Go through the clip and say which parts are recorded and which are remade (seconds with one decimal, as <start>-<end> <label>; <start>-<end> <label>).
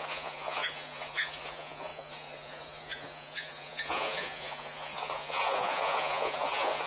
0.0-6.9 remade